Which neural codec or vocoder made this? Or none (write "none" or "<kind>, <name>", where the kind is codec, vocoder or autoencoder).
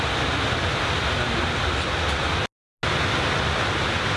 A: none